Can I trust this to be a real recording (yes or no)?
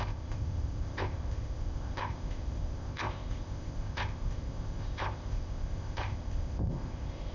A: no